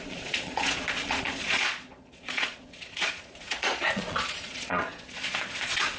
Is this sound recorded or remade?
remade